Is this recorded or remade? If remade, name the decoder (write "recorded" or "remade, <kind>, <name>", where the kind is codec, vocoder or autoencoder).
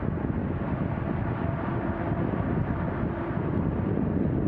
recorded